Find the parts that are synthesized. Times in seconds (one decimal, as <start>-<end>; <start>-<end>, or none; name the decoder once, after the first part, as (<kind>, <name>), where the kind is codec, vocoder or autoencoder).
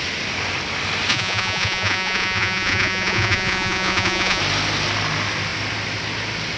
1.1-4.4 (vocoder, Vocos)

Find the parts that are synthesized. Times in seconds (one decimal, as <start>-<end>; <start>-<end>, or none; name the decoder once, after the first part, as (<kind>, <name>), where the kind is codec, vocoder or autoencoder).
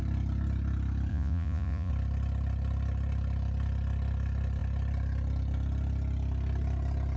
1.1-1.9 (vocoder, Vocos)